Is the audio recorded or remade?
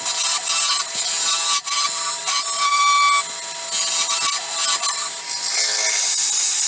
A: recorded